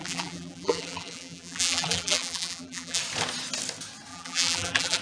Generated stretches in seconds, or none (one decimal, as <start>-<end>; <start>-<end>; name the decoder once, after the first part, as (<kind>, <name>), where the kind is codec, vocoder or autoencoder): 0.0-3.0 (vocoder, BigVGAN v2); 4.1-5.0